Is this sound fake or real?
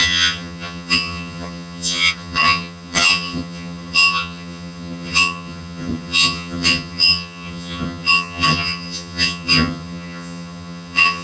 fake